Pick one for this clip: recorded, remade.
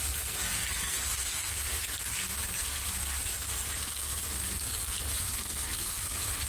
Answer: remade